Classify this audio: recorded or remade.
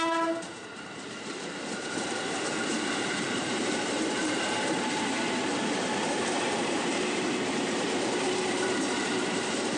remade